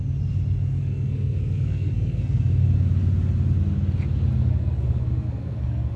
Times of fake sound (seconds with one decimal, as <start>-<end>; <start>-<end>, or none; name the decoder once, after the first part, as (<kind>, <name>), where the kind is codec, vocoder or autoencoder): 0.8-2.5 (codec, SNAC); 4.5-6.0